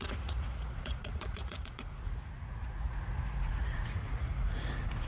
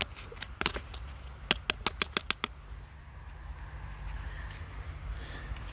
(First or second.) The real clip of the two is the second